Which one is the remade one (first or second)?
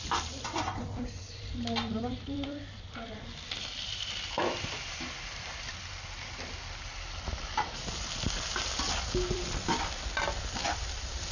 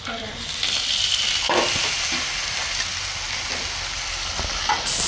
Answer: first